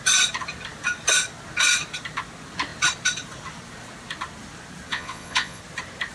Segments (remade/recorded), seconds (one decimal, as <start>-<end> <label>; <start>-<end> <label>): 0.0-4.9 recorded; 4.9-5.6 remade; 5.6-6.1 recorded